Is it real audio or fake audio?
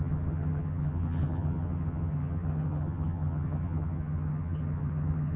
fake